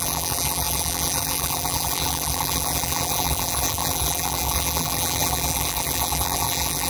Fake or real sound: fake